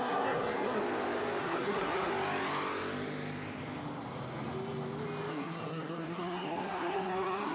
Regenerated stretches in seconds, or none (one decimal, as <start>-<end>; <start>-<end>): 0.0-0.8; 1.4-2.1; 5.3-7.5